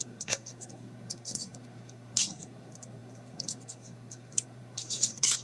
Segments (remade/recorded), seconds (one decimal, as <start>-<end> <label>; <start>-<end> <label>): 0.0-5.4 remade